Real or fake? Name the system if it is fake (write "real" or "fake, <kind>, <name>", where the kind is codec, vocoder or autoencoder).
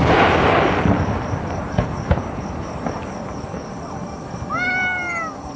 real